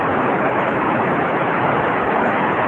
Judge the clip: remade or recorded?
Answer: remade